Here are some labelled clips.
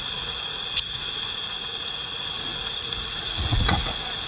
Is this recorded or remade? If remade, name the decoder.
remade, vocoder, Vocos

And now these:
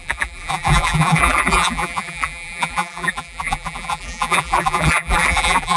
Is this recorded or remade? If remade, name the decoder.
remade, vocoder, BigVGAN v2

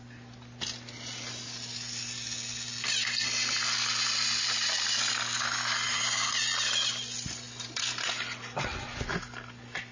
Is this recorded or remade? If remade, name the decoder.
recorded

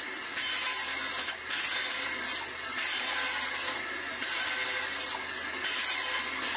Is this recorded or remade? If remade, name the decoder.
recorded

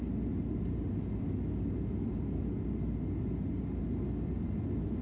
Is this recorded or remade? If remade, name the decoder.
recorded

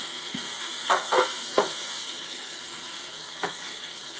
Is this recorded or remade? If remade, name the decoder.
remade, codec, SNAC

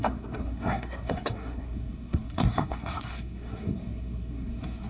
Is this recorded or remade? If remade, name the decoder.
remade, codec, SNAC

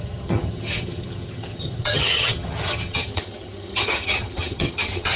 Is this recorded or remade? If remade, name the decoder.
remade, vocoder, HiFi-GAN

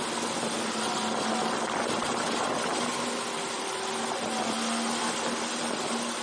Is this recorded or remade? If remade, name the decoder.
recorded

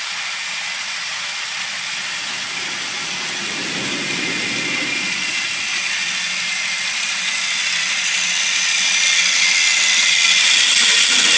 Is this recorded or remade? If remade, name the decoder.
recorded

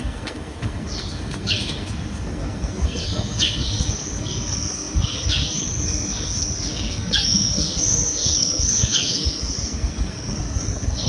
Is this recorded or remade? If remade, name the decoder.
remade, codec, SNAC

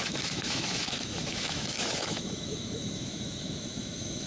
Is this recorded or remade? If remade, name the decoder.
remade, autoencoder, DAC-VAE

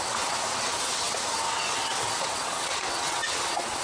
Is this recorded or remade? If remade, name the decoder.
remade, vocoder, WaveNeXt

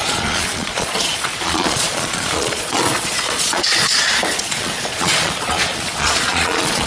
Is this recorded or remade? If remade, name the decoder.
remade, vocoder, Vocos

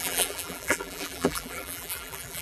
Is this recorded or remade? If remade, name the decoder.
remade, vocoder, BigVGAN v2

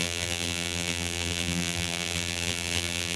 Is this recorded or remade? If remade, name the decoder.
remade, vocoder, BigVGAN v2